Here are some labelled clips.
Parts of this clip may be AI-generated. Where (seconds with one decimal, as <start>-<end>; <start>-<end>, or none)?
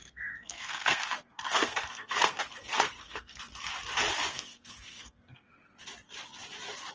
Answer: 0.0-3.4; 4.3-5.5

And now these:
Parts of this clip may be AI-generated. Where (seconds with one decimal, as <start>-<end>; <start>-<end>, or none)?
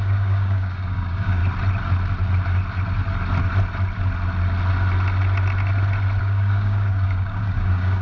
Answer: 0.0-1.4; 6.2-8.0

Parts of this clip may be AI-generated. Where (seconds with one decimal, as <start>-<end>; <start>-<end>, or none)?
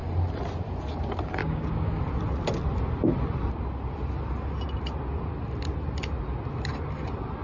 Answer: 1.4-2.0